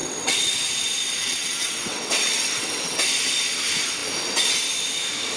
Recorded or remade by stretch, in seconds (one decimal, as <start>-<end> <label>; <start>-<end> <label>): 0.0-0.5 remade; 0.5-1.2 recorded; 1.2-3.0 remade; 3.0-5.4 recorded